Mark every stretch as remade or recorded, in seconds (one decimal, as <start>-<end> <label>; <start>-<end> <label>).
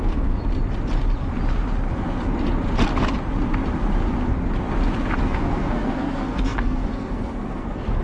0.0-0.4 remade; 0.4-5.2 recorded; 5.2-8.0 remade